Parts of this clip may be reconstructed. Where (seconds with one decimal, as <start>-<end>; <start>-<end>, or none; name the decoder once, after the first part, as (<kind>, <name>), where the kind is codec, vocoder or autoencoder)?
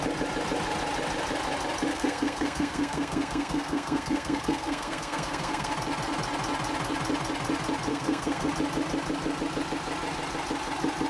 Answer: 1.9-5.7 (codec, SNAC); 7.9-8.5